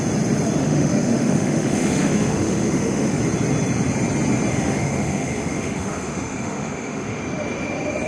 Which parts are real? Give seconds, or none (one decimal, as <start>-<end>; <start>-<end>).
0.0-0.6; 3.2-4.5; 7.2-8.1